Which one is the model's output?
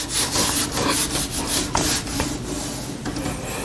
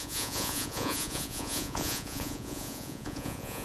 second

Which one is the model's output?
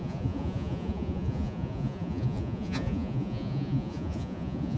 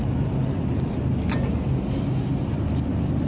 first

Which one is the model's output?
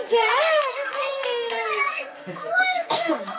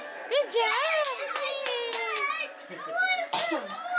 first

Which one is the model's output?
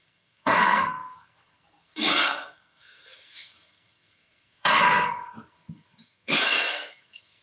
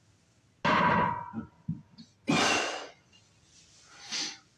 first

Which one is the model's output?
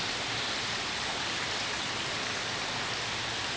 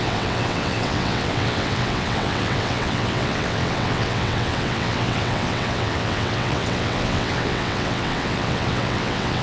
second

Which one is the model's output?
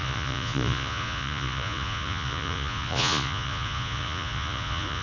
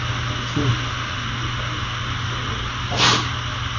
first